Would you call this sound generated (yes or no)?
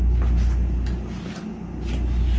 no